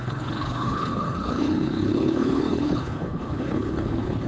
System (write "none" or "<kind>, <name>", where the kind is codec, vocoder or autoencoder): codec, HILCodec